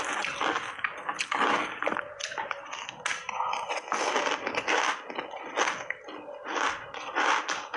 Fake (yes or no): no